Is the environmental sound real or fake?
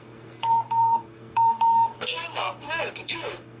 fake